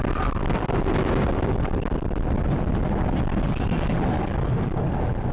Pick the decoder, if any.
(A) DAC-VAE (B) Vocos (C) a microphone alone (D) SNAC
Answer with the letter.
C